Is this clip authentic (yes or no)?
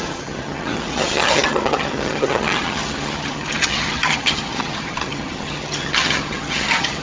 no